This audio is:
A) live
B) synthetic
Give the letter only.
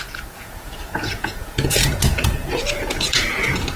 B